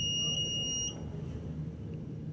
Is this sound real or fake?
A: real